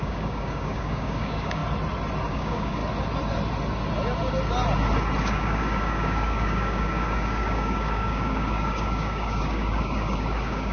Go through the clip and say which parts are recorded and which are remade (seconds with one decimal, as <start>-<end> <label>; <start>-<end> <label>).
0.0-1.6 remade; 1.6-2.3 recorded; 2.3-2.8 remade; 2.8-5.2 recorded; 5.2-10.7 remade